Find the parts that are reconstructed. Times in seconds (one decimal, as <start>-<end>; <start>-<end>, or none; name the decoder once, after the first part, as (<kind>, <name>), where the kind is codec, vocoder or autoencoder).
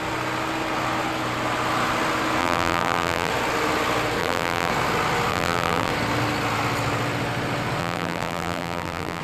2.4-3.3 (vocoder, BigVGAN v2); 4.2-4.7; 5.3-5.9; 7.8-9.2